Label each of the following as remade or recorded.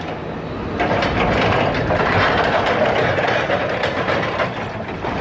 recorded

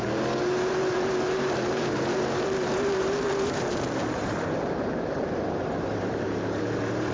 remade